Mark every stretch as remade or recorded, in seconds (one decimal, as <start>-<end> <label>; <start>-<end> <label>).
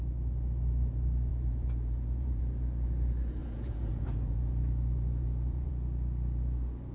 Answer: 0.0-1.3 recorded; 1.3-2.4 remade; 2.4-3.4 recorded; 3.4-5.7 remade; 5.7-6.9 recorded